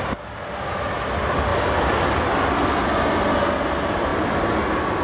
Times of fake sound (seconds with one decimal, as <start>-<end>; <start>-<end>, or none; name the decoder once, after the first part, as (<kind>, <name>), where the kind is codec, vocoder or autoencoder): none